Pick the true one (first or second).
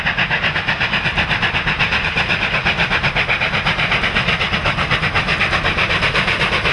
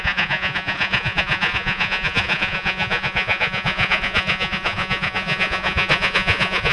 first